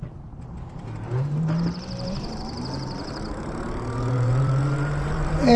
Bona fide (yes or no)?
no